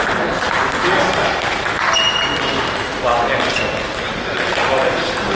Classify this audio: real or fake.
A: real